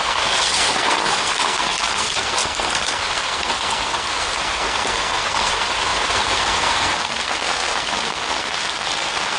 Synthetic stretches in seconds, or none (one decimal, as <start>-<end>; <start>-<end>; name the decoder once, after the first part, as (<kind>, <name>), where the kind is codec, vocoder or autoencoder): 0.0-9.4 (codec, SNAC)